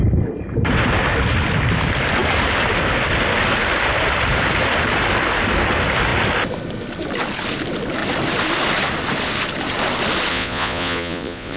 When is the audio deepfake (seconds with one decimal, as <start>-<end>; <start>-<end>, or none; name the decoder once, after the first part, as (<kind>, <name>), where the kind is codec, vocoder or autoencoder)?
10.3-11.6 (vocoder, Vocos)